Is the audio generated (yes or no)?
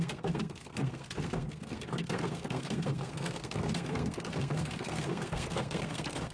yes